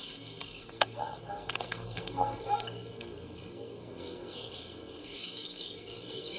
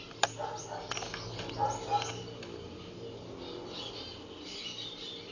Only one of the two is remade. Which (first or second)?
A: first